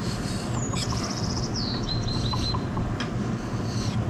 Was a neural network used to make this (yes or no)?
yes